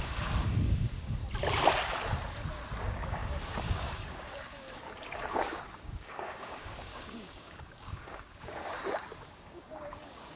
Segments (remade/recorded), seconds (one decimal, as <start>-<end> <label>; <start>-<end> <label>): 0.0-1.2 remade; 1.2-2.8 recorded; 2.8-10.4 remade